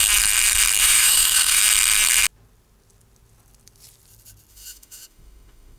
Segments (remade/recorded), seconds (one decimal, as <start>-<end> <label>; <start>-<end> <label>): 0.0-0.8 recorded; 0.8-1.6 remade; 1.6-4.5 recorded; 4.5-5.8 remade